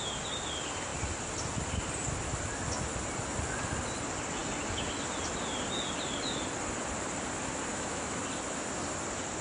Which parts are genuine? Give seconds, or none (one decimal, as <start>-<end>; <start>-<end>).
0.0-7.7; 8.2-9.4